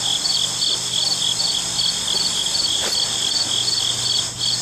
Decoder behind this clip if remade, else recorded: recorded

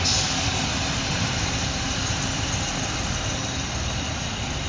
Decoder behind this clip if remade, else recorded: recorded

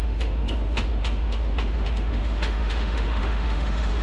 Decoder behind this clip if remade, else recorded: remade, autoencoder, DAC-VAE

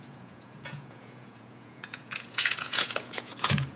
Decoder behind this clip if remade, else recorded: remade, vocoder, Vocos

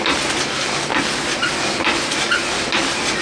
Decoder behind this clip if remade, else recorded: recorded